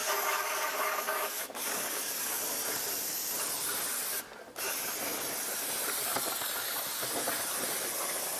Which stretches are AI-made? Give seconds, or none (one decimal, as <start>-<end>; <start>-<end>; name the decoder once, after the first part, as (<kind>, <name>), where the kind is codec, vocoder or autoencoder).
0.0-2.4 (codec, DAC)